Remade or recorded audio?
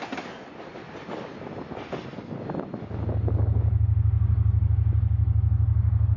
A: recorded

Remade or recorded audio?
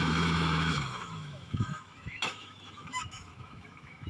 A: remade